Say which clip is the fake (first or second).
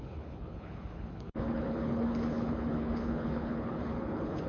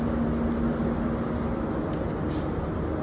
first